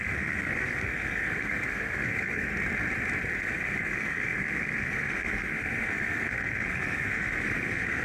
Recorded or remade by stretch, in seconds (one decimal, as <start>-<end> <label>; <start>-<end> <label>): 0.0-2.5 remade; 2.5-3.4 recorded; 3.4-8.0 remade